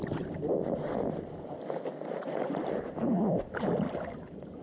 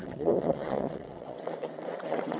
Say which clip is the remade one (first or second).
second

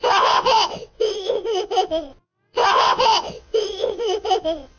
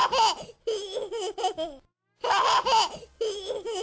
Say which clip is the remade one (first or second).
first